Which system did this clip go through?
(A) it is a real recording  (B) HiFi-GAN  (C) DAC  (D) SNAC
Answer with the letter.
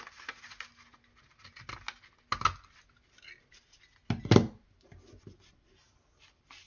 A